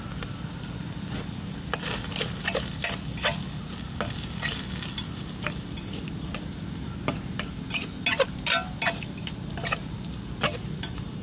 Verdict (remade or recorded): recorded